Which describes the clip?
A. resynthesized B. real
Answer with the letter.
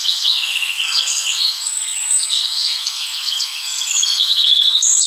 A